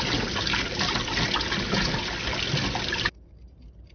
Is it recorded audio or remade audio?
recorded